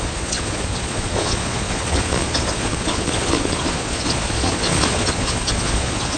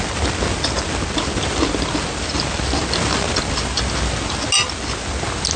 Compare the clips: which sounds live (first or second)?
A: second